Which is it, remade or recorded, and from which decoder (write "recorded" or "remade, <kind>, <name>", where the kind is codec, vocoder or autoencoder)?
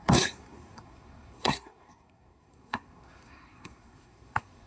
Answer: remade, codec, SNAC